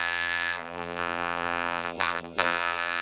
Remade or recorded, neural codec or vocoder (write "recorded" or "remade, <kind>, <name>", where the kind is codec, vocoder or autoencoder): remade, vocoder, BigVGAN v2